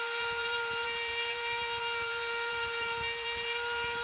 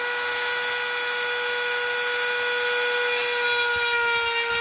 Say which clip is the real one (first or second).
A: second